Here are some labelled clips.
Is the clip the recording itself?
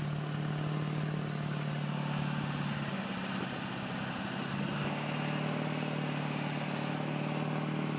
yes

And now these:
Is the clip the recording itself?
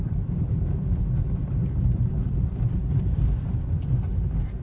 no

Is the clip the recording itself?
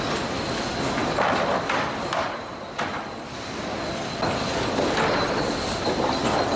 yes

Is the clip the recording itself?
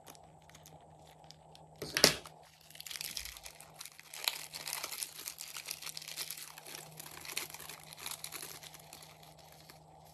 yes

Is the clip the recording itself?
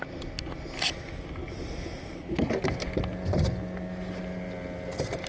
yes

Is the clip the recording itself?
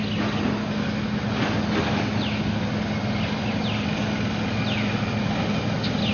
yes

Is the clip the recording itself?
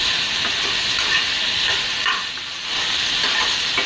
yes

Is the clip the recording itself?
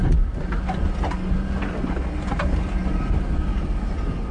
yes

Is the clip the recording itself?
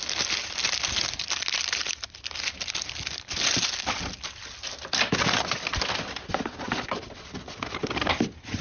yes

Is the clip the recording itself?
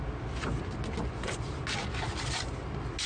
yes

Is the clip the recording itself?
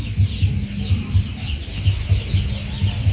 yes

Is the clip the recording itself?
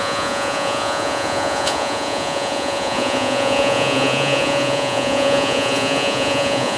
no